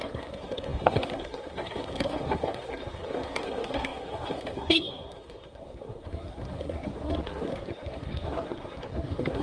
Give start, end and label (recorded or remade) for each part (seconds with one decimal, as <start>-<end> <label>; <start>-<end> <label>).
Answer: 0.0-9.4 remade

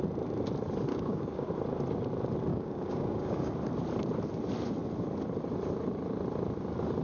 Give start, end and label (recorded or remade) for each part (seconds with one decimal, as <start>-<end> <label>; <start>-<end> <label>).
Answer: 0.0-0.9 recorded; 0.9-1.5 remade; 1.5-2.5 recorded; 2.5-3.5 remade; 3.5-7.0 recorded

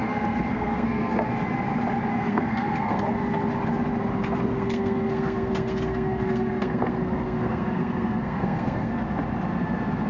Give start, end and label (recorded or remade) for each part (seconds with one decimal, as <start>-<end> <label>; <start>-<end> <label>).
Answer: 0.0-1.3 remade; 1.3-2.1 recorded; 2.1-3.0 remade; 3.0-4.5 recorded; 4.5-8.9 remade; 8.9-10.1 recorded